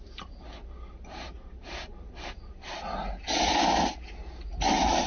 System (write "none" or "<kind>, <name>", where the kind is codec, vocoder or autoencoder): none